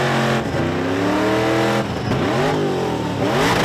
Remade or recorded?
recorded